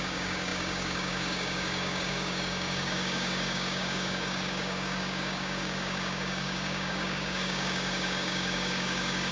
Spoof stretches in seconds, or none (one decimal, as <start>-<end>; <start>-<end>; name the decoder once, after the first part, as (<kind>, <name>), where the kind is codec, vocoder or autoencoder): 0.0-9.3 (codec, DAC)